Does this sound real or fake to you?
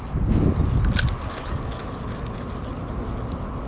real